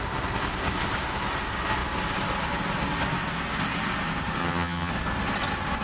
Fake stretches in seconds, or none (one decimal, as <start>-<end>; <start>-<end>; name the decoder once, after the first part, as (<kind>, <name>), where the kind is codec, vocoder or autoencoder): 4.4-4.9 (vocoder, HiFi-GAN)